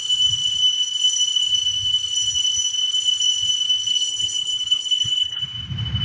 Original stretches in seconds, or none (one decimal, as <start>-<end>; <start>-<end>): 0.0-3.9; 5.4-6.0